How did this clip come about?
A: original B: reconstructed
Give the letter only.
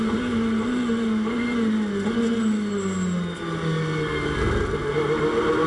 A